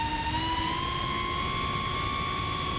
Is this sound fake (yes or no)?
no